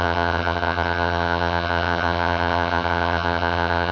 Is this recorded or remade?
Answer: remade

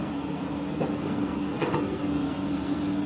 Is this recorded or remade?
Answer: remade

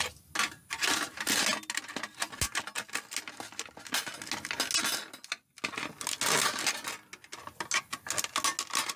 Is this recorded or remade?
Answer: recorded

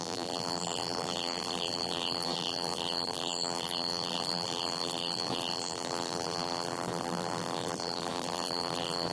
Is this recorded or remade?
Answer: remade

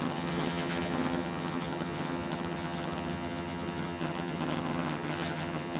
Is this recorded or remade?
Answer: remade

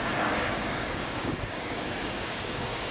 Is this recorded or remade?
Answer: remade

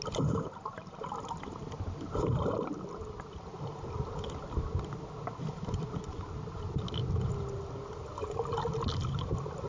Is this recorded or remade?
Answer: recorded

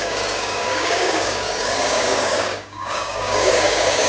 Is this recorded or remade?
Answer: remade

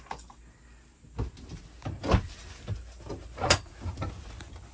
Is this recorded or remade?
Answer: recorded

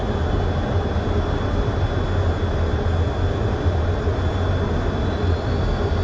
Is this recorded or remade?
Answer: recorded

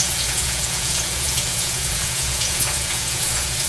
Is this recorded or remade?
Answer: remade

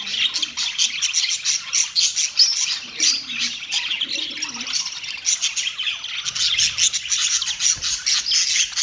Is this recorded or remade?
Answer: recorded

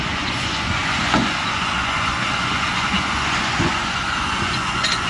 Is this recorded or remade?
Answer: remade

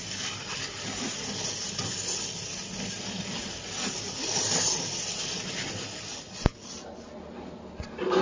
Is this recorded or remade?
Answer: recorded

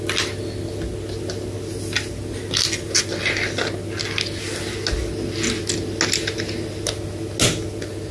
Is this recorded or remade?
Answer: recorded